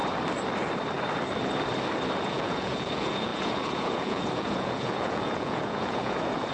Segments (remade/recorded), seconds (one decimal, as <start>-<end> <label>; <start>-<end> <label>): 0.0-2.3 recorded; 2.3-6.5 remade